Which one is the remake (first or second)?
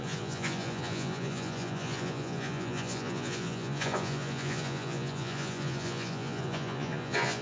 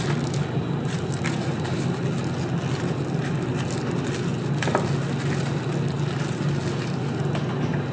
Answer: first